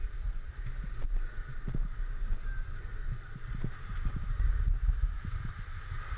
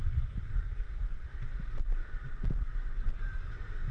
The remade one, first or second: second